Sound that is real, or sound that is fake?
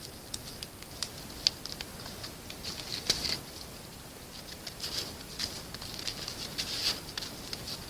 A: real